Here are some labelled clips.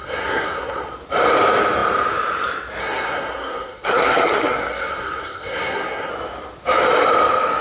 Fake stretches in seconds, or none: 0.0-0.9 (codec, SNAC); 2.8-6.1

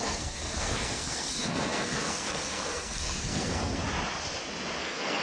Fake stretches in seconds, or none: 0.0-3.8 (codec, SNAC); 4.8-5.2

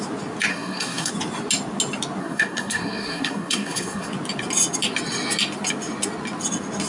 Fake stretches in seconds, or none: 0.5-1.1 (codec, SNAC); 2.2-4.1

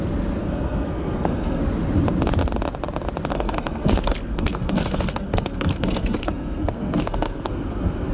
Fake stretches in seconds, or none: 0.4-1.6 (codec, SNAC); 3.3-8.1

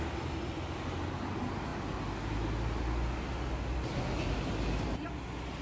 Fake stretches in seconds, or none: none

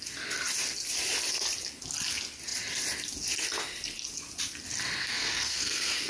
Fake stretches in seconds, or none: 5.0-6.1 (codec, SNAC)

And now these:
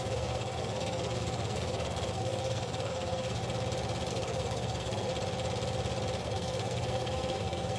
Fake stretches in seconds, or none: 0.0-3.4 (codec, SNAC); 4.1-5.1; 6.2-7.8